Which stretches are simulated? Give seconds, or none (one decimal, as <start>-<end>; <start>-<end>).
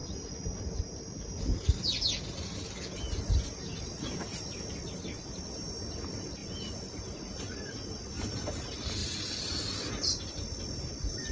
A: 9.0-9.9